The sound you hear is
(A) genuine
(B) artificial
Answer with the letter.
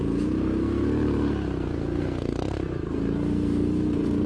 B